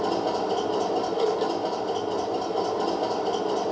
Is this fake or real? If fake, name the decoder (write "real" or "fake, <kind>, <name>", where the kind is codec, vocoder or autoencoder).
real